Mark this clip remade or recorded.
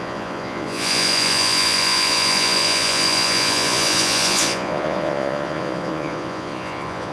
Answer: remade